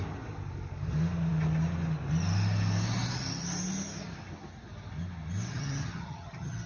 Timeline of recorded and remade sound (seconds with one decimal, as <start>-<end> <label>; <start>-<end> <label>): 0.0-5.5 recorded; 5.5-6.7 remade